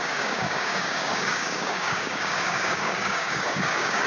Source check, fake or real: fake